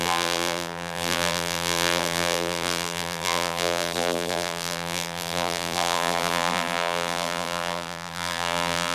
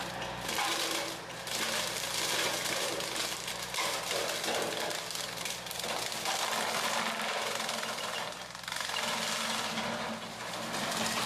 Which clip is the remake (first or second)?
first